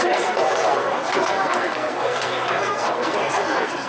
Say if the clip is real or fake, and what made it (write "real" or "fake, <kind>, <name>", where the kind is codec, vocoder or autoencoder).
fake, codec, SNAC